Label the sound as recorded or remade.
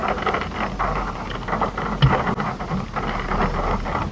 recorded